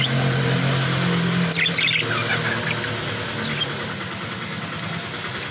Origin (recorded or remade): recorded